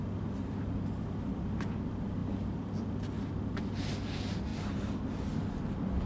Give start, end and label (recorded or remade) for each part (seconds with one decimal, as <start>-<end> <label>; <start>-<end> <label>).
0.0-6.1 recorded